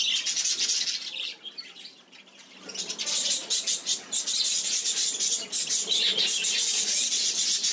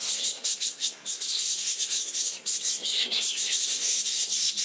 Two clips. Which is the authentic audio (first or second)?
first